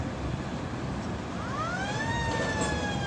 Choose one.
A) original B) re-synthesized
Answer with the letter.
A